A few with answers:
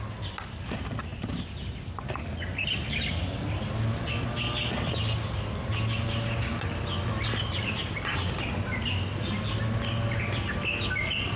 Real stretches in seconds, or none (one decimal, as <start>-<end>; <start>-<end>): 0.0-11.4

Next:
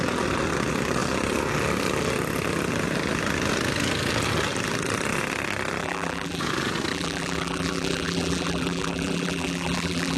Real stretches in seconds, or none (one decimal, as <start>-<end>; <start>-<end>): 0.0-5.8; 6.4-6.9

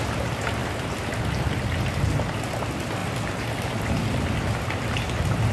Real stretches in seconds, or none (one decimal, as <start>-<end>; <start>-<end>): 0.0-5.5